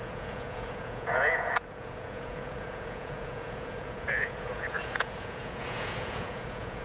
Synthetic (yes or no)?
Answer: yes